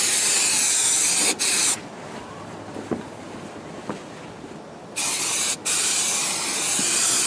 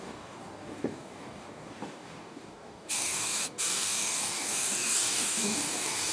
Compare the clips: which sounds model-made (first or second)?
second